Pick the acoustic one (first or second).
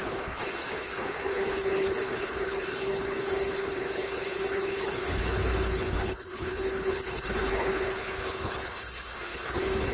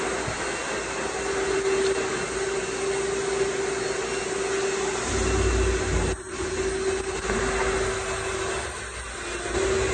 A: second